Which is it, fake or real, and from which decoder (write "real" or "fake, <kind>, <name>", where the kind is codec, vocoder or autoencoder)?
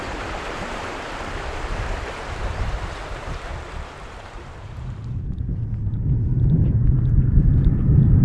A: fake, vocoder, BigVGAN v2